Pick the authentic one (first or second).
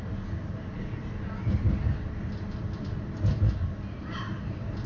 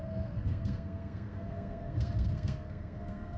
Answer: first